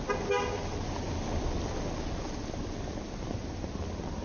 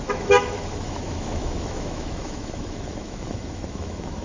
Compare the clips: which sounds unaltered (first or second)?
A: first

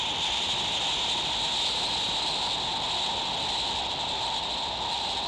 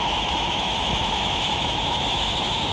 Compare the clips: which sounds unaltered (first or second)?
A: first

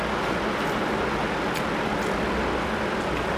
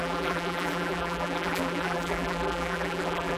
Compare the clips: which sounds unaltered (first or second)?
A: first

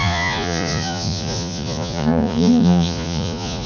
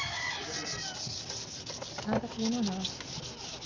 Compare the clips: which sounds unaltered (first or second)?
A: second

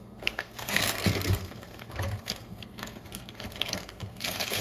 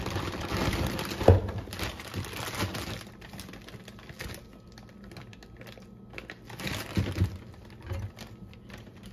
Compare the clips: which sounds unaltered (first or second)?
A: second